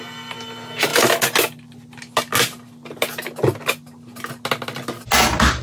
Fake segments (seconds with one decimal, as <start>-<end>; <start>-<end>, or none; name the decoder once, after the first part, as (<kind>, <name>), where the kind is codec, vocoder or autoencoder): none